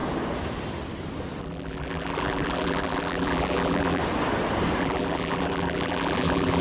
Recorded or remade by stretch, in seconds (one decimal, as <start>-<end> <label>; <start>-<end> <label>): 0.0-1.4 recorded; 1.4-4.0 remade; 4.0-4.8 recorded; 4.8-6.6 remade